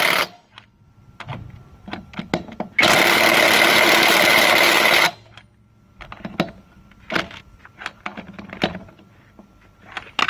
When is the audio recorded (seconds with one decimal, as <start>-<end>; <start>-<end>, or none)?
0.0-10.3

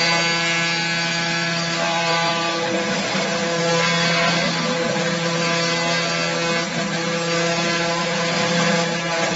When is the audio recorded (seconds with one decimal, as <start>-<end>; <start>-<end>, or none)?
0.0-1.1; 3.6-9.4